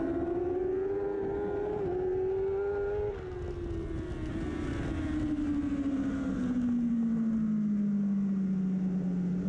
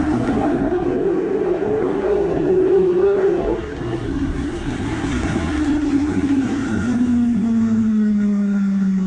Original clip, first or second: first